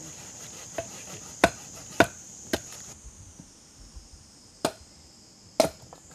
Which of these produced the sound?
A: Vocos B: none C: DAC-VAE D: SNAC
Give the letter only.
B